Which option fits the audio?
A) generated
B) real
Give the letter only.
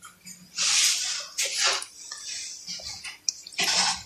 B